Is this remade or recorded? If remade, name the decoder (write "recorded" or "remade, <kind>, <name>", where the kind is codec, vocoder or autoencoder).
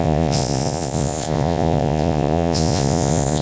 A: remade, vocoder, Vocos